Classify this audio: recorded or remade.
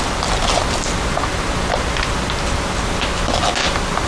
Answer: recorded